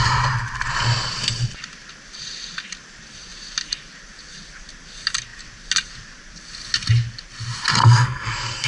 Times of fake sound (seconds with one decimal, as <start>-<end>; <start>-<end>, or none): 7.8-8.7